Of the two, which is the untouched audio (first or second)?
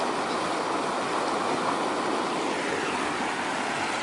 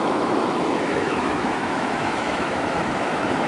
first